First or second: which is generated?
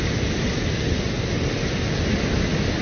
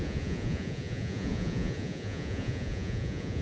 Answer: second